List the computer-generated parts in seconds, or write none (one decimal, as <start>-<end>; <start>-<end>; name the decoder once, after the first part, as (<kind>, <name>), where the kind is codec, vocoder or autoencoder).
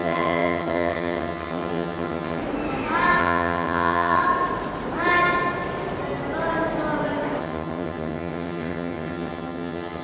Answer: 0.0-2.4 (vocoder, HiFi-GAN); 3.2-4.2; 7.4-10.0